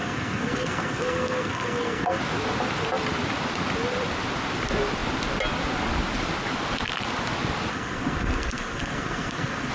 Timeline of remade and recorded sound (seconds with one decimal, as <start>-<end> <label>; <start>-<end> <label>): 0.0-2.2 remade; 2.2-7.7 recorded; 7.7-9.7 remade

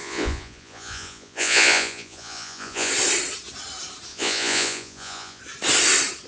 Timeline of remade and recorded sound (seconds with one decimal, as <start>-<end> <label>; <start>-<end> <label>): 0.0-2.9 remade; 2.9-4.1 recorded; 4.1-5.4 remade; 5.4-6.3 recorded